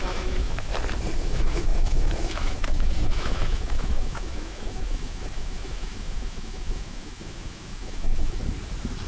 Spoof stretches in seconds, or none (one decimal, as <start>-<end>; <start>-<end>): 0.0-0.7; 1.2-8.4